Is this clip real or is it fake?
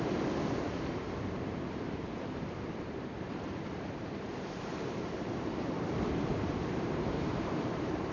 fake